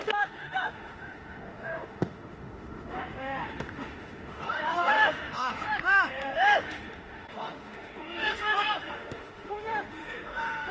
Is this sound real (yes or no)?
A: no